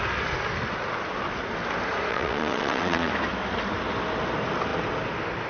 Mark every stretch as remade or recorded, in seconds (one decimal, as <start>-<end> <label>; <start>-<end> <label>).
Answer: 0.0-2.1 recorded; 2.1-3.1 remade; 3.1-5.5 recorded